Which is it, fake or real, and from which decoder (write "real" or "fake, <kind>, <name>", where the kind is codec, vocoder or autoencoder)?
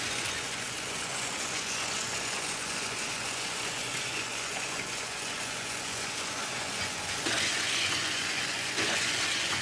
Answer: fake, vocoder, Vocos